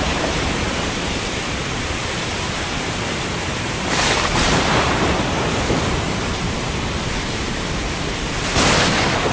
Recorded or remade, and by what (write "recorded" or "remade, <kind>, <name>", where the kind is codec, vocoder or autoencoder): remade, vocoder, BigVGAN v2